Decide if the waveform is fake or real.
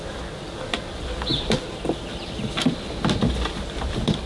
real